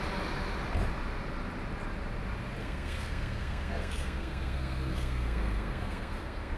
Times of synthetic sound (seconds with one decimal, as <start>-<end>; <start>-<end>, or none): 2.6-6.6